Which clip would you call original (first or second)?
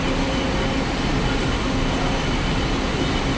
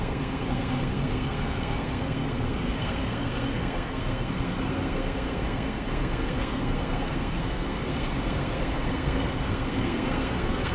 first